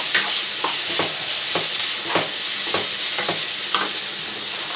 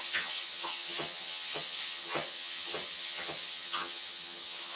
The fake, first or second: second